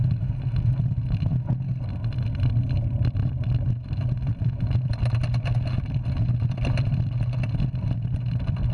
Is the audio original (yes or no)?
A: yes